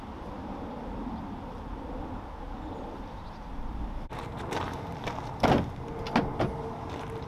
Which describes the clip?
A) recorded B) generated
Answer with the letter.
A